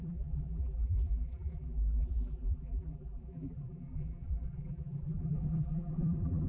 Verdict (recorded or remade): remade